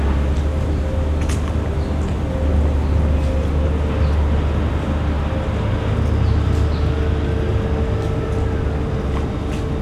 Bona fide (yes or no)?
yes